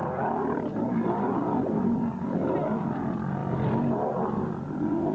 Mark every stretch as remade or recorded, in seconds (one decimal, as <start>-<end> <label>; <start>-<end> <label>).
0.0-3.4 recorded; 3.4-3.9 remade; 3.9-5.1 recorded